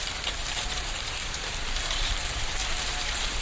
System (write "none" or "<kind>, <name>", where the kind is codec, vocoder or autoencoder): vocoder, BigVGAN v2